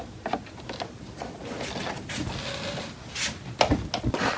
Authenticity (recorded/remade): recorded